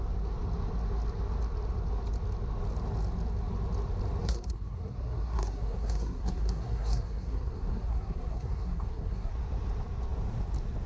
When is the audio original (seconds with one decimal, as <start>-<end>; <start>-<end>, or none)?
0.0-4.2; 9.3-10.9